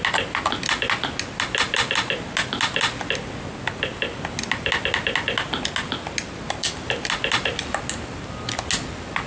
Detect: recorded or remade recorded